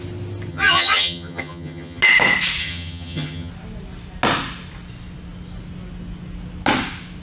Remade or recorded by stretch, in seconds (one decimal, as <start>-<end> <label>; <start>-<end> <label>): 0.0-0.5 recorded; 0.5-2.0 remade; 2.0-2.6 recorded; 2.6-3.5 remade; 3.5-7.2 recorded